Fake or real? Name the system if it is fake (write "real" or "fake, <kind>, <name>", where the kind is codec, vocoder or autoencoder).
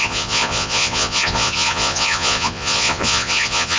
fake, vocoder, Vocos